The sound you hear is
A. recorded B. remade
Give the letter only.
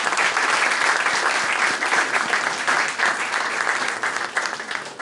A